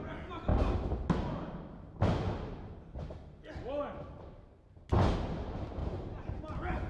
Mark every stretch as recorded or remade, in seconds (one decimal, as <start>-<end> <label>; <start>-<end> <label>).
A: 0.0-5.8 recorded; 5.8-6.4 remade; 6.4-6.9 recorded